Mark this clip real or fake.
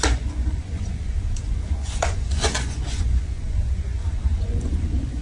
fake